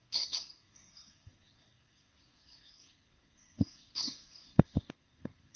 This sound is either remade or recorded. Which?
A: remade